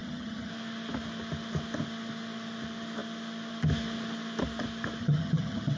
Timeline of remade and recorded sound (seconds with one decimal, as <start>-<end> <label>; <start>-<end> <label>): 0.0-0.5 remade; 0.5-5.0 recorded; 5.0-5.8 remade